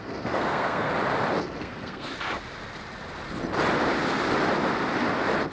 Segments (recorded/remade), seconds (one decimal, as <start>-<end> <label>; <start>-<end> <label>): 0.0-0.9 remade; 0.9-1.6 recorded; 1.6-2.1 remade; 2.1-5.5 recorded